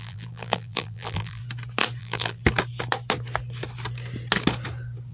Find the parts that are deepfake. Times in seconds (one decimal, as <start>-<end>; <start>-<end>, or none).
0.0-1.4; 2.0-2.4